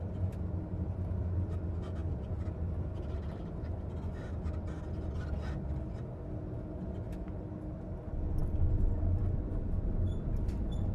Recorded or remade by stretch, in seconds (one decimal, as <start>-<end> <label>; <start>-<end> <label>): 0.0-10.9 recorded